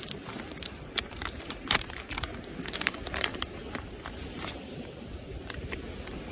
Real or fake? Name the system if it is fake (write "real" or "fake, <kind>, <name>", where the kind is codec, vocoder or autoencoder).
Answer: fake, vocoder, BigVGAN v2